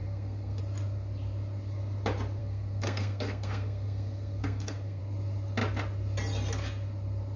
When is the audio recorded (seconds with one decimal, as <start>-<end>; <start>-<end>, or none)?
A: 0.6-2.4; 5.0-7.4